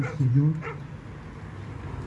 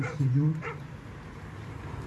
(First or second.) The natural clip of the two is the first